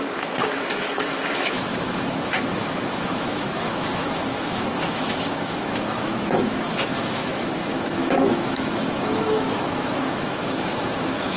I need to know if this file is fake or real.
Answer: fake